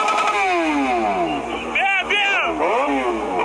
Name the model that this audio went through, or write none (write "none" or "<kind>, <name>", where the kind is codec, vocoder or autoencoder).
none